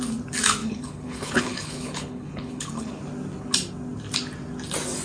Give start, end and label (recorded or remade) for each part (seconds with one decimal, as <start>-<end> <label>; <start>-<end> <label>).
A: 0.0-0.6 recorded; 0.6-3.0 remade; 3.0-5.0 recorded

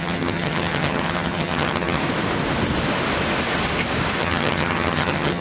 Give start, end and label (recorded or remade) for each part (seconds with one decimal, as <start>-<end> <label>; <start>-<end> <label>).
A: 0.0-2.0 remade; 2.0-4.2 recorded; 4.2-5.4 remade

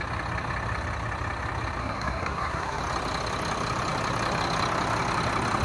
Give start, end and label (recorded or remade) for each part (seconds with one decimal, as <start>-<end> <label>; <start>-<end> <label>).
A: 0.0-1.8 recorded; 1.8-2.8 remade; 2.8-5.6 recorded